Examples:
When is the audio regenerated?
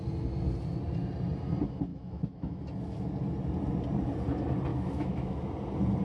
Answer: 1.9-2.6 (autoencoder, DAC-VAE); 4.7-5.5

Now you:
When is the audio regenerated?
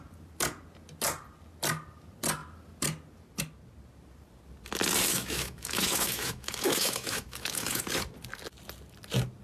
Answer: 5.1-7.8 (autoencoder, DAC-VAE)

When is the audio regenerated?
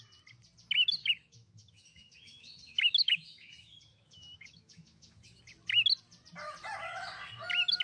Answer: 1.0-5.4 (autoencoder, DAC-VAE)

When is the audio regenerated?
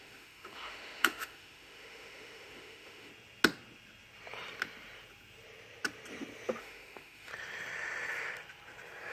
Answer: 0.0-3.1 (autoencoder, DAC-VAE); 6.6-7.3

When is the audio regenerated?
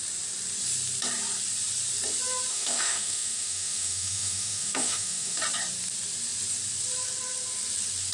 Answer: 2.5-5.4 (autoencoder, DAC-VAE)